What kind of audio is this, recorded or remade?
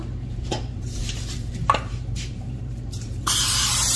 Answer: remade